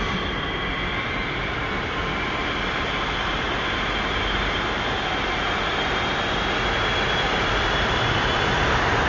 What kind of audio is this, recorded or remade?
recorded